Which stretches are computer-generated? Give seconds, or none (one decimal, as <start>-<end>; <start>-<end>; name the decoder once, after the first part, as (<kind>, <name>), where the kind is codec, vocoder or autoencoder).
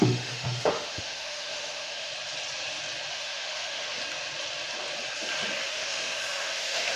0.0-2.1 (autoencoder, DAC-VAE); 3.1-4.0; 5.7-7.0